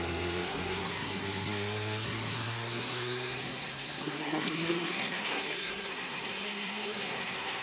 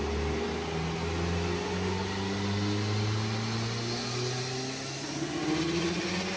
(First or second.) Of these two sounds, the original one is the second